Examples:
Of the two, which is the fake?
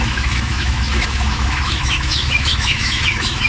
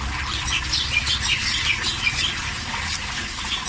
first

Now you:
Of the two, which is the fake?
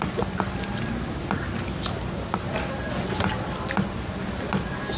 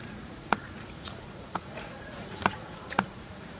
second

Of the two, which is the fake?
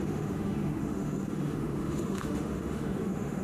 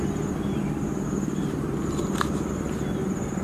first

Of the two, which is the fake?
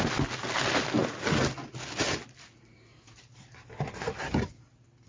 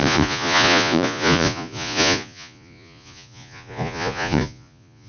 second